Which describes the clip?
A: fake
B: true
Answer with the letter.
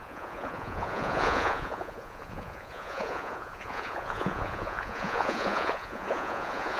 A